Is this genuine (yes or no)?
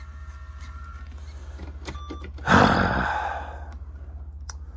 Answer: yes